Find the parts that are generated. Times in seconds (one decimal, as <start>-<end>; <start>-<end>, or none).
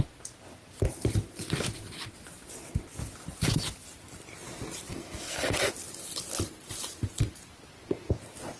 4.9-5.6